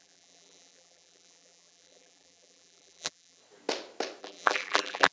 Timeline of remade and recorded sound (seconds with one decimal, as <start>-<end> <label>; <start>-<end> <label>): 0.0-3.4 remade; 3.4-4.2 recorded; 4.2-5.1 remade